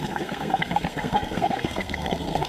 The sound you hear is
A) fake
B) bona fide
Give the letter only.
A